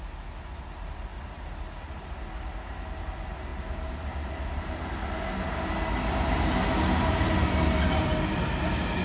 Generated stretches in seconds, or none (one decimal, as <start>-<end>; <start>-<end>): none

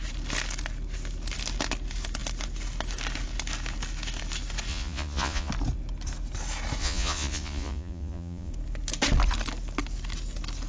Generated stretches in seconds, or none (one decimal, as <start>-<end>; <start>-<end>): 4.7-5.5; 6.8-8.5